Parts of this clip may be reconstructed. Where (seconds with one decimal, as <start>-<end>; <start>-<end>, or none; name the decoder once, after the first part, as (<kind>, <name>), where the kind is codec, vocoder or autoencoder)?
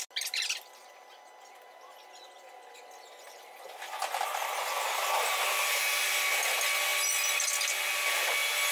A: none